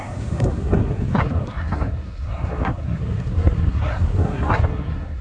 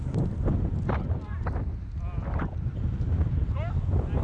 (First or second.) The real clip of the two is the second